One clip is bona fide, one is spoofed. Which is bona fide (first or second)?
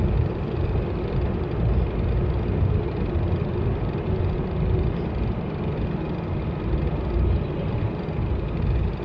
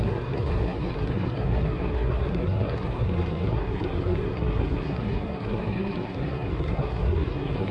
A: first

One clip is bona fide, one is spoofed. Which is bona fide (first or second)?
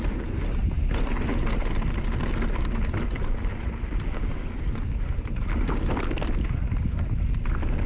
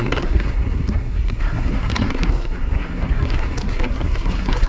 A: first